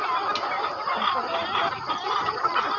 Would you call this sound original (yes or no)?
yes